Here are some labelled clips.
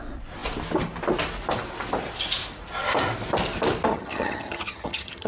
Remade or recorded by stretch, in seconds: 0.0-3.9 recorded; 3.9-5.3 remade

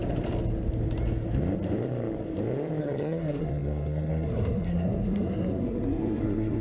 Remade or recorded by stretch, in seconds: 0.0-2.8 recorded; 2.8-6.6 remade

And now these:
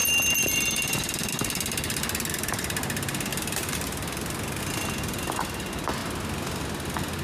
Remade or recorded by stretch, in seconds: 0.0-1.3 remade; 1.3-7.2 recorded